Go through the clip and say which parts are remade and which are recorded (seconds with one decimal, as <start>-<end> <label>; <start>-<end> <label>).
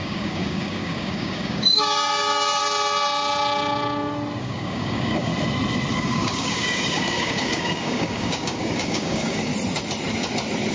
0.0-2.6 remade; 2.6-4.4 recorded; 4.4-5.3 remade; 5.3-5.9 recorded; 5.9-9.5 remade; 9.5-10.7 recorded